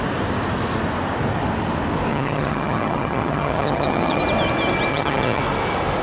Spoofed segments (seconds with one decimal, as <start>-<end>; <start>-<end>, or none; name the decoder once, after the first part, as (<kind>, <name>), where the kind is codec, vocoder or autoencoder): 2.1-4.2 (vocoder, HiFi-GAN); 4.9-5.4